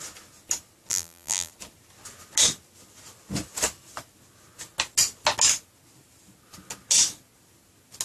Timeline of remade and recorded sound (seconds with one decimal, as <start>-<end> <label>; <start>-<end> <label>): 0.0-0.9 recorded; 0.9-1.5 remade; 1.5-8.0 recorded